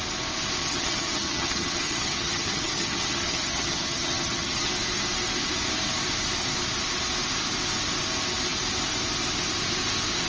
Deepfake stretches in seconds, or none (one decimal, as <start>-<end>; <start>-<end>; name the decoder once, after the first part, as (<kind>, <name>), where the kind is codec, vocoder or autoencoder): 0.6-4.7 (vocoder, HiFi-GAN)